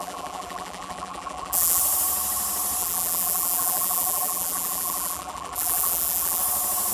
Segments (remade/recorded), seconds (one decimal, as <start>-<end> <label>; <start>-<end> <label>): 0.0-1.8 remade; 1.8-2.8 recorded; 2.8-6.4 remade; 6.4-6.9 recorded